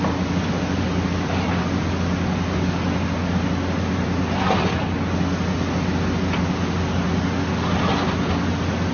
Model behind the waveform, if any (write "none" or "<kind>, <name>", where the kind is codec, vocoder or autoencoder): none